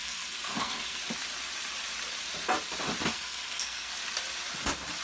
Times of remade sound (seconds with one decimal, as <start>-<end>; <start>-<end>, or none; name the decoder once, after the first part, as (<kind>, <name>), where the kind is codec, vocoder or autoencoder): 0.0-1.0 (codec, SNAC); 3.1-3.9